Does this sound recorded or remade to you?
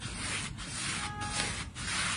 recorded